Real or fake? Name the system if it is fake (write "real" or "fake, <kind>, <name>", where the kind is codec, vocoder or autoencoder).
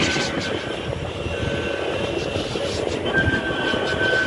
real